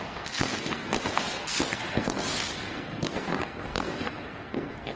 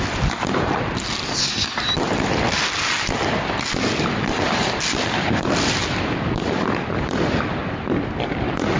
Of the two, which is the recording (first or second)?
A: second